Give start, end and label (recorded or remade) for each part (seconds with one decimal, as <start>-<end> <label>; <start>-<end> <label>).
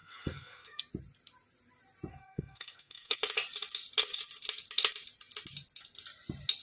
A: 0.0-0.8 remade; 0.8-2.1 recorded; 2.1-3.2 remade; 3.2-6.6 recorded